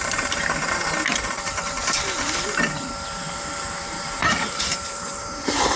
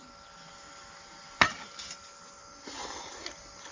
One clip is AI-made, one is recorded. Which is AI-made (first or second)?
first